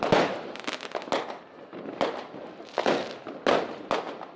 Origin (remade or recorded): recorded